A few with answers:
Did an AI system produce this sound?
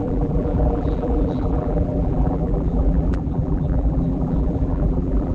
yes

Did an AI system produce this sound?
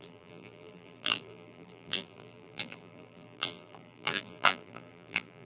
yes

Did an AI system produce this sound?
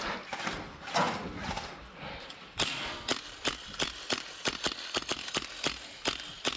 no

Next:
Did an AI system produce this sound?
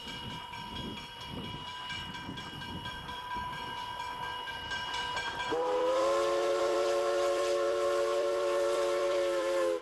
yes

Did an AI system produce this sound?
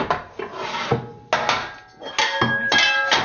no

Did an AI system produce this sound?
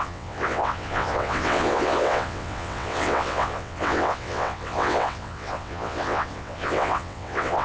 yes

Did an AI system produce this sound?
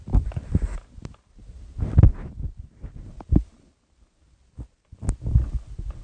no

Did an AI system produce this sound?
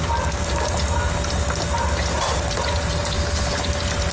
no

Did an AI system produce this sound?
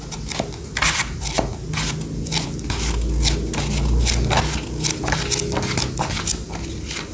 no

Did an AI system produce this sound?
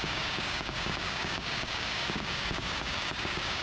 yes